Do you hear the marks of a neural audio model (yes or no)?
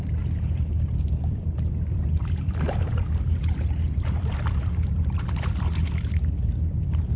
yes